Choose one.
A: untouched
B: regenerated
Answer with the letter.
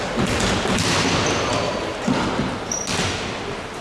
A